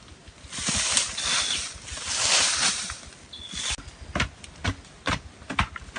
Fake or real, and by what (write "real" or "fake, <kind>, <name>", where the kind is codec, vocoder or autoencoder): real